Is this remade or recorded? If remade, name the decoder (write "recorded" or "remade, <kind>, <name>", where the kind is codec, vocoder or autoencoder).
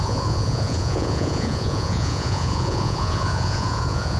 remade, vocoder, Vocos